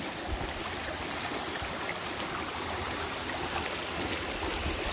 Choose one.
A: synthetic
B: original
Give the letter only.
B